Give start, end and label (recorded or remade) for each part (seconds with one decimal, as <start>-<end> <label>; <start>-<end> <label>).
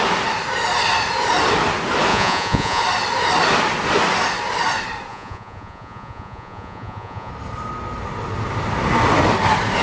0.0-2.1 recorded; 2.1-2.8 remade; 2.8-5.1 recorded; 5.1-7.3 remade; 7.3-9.8 recorded